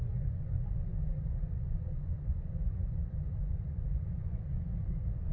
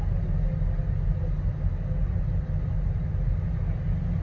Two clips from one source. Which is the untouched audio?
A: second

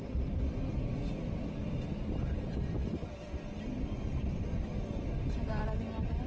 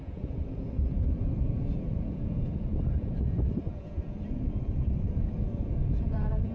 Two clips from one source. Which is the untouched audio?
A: first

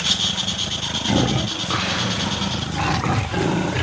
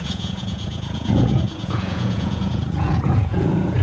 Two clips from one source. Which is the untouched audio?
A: first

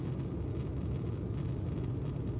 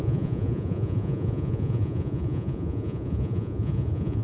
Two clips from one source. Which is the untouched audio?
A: first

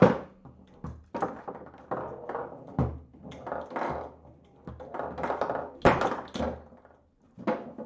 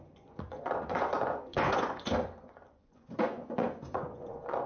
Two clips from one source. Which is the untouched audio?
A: first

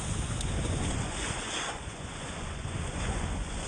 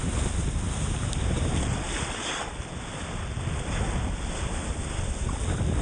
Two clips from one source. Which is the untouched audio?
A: second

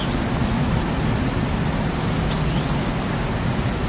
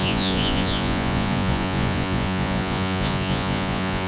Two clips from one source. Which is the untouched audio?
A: first